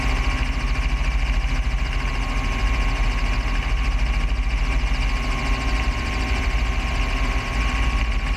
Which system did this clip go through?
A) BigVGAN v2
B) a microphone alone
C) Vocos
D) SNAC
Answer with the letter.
B